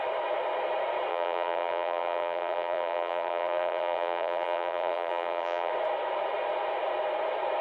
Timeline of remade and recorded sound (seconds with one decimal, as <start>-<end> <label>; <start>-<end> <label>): 0.0-1.1 recorded; 1.1-5.7 remade; 5.7-7.6 recorded